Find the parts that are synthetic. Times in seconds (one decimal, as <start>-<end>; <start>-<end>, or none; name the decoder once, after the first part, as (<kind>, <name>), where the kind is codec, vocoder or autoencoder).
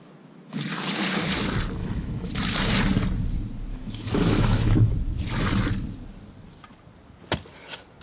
1.8-2.4 (autoencoder, DAC-VAE); 3.7-4.9